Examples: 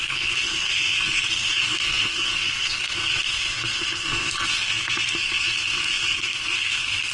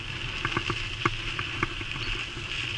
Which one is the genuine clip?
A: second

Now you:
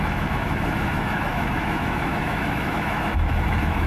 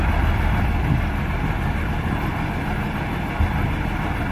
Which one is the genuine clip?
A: second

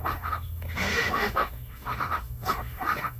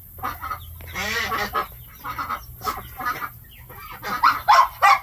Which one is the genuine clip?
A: second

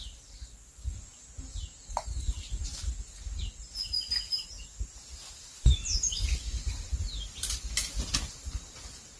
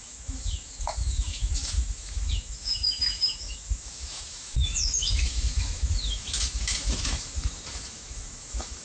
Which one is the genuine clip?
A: first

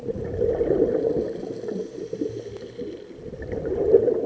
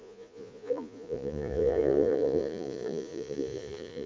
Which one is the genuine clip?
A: first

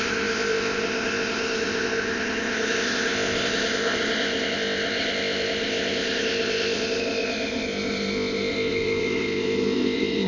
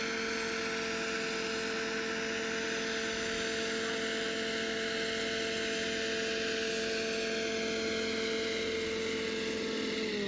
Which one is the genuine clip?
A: second